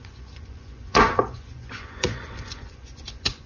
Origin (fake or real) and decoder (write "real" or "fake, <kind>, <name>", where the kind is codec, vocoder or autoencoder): fake, vocoder, Vocos